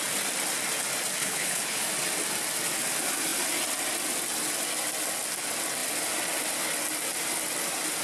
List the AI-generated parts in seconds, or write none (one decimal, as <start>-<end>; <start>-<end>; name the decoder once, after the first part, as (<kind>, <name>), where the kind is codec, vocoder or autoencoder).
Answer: 1.2-1.8 (codec, HILCodec)